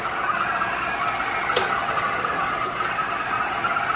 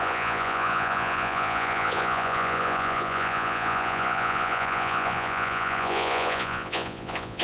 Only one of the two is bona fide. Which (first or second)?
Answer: first